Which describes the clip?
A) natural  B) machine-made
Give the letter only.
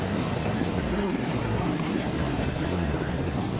B